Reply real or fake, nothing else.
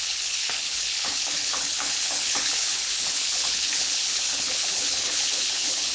fake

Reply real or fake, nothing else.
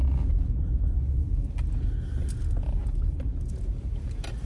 real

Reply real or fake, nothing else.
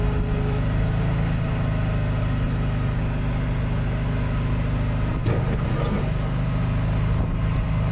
real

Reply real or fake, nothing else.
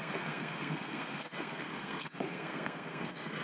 fake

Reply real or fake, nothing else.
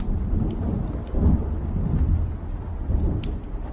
real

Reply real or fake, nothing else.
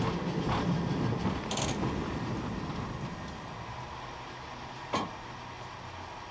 real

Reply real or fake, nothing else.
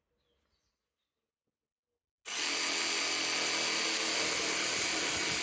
real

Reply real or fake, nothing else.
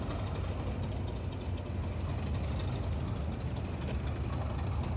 real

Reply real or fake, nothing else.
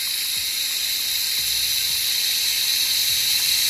real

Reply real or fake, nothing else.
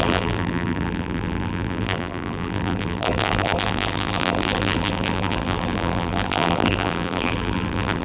fake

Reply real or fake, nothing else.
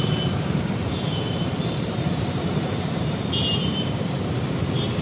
fake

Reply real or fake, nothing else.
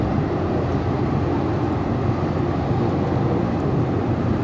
real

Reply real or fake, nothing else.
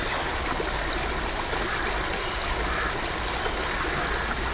real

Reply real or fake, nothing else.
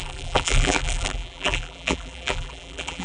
fake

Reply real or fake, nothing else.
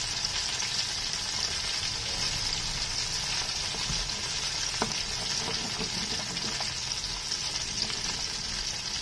real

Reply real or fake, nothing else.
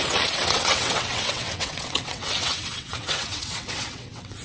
fake